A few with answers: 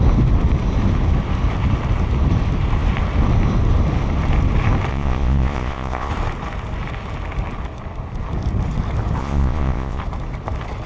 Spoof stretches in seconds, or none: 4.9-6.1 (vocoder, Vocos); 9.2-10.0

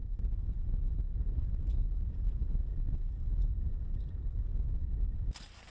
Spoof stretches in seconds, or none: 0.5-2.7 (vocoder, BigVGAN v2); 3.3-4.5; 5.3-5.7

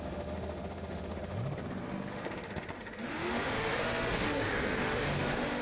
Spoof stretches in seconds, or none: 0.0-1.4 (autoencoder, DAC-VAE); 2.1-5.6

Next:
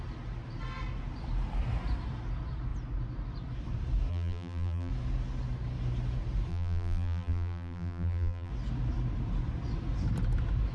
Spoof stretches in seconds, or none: 4.1-4.9 (vocoder, BigVGAN v2); 6.5-8.5

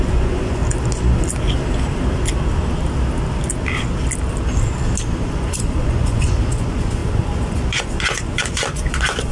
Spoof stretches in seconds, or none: 0.0-0.6 (vocoder, Vocos); 5.1-9.3

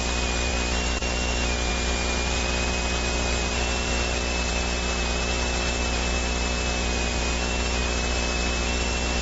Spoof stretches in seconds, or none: none

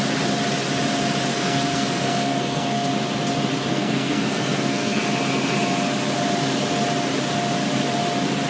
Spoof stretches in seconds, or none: 1.3-2.9 (codec, SNAC); 3.7-5.0

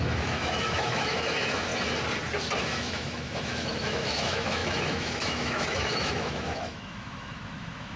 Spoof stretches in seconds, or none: 0.0-1.7 (autoencoder, DAC-VAE); 2.6-8.0